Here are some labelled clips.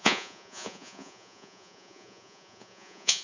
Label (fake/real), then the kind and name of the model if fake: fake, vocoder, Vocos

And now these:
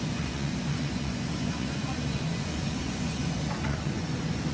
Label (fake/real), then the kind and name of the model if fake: fake, vocoder, Vocos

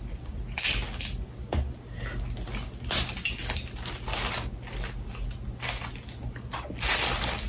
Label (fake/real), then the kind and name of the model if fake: real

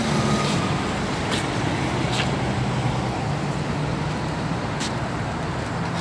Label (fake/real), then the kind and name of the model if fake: real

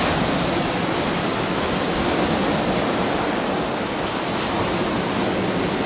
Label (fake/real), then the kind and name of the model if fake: real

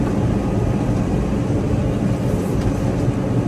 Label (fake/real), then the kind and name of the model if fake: real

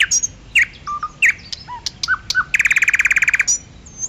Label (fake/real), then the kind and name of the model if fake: real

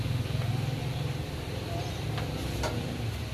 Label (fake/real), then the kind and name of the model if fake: real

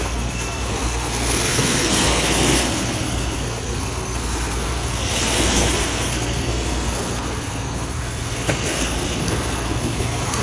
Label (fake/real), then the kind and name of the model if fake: fake, codec, SNAC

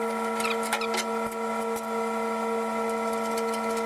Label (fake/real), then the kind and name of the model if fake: real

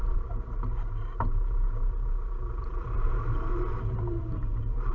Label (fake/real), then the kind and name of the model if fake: fake, vocoder, BigVGAN v2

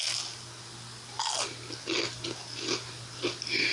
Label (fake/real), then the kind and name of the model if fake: real